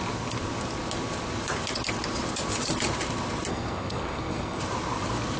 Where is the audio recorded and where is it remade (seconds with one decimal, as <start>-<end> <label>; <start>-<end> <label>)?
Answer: 0.0-3.5 recorded; 3.5-4.6 remade; 4.6-5.4 recorded